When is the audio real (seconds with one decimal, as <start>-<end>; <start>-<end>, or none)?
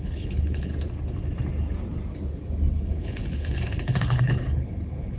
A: 0.7-2.7